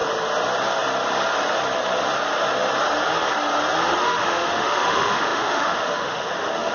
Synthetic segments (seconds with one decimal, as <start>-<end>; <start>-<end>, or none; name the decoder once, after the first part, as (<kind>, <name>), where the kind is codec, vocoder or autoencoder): 4.0-6.7 (autoencoder, DAC-VAE)